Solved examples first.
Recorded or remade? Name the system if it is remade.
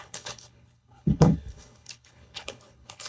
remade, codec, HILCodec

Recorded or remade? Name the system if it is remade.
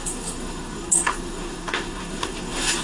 remade, codec, SNAC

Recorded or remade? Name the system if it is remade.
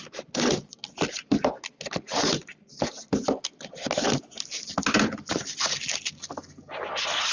recorded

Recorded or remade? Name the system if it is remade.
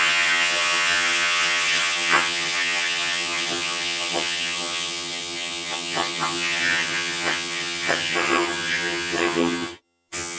remade, vocoder, HiFi-GAN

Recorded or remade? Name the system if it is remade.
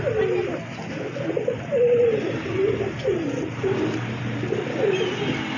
recorded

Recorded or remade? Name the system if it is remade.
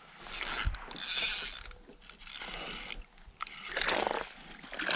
recorded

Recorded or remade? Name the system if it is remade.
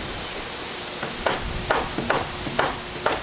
recorded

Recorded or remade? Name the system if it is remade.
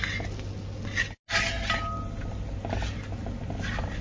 recorded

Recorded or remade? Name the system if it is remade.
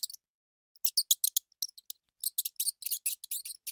recorded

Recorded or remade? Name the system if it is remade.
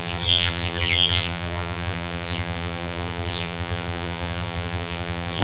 remade, vocoder, BigVGAN v2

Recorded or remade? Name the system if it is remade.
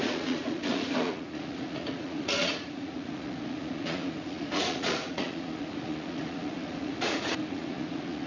remade, vocoder, Vocos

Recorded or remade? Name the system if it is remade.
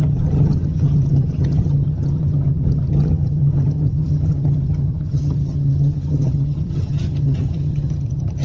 remade, vocoder, HiFi-GAN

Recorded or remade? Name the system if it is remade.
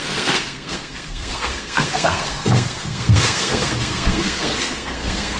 remade, codec, SNAC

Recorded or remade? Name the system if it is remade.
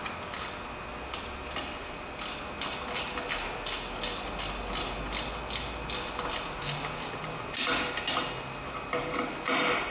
recorded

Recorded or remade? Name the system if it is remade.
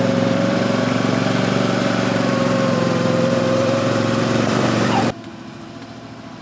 remade, vocoder, BigVGAN v2